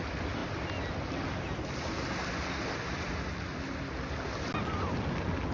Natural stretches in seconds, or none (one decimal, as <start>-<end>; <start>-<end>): 0.0-5.5